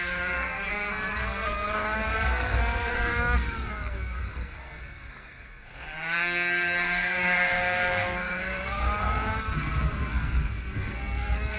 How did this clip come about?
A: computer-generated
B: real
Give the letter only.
A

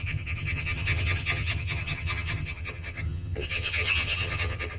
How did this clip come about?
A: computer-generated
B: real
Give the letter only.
A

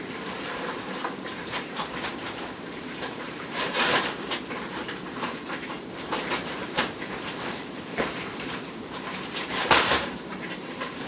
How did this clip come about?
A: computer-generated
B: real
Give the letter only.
A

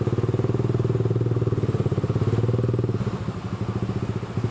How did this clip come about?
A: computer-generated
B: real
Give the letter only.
B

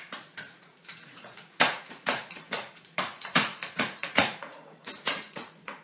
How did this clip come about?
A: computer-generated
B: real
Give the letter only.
A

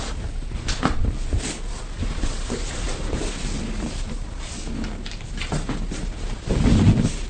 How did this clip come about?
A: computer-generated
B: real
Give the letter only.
B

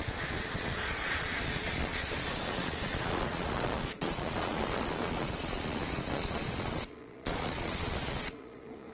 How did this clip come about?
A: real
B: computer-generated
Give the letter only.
B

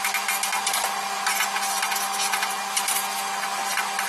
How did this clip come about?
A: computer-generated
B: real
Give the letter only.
B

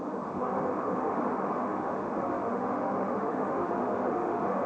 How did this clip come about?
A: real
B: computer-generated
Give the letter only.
B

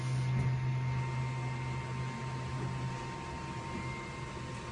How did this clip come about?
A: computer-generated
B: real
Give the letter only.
B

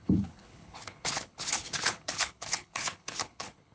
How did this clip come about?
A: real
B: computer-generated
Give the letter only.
B